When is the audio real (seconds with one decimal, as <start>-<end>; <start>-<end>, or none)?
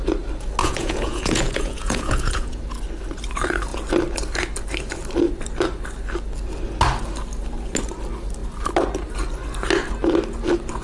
0.0-0.6; 2.6-10.8